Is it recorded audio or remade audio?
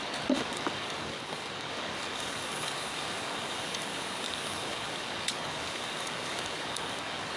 remade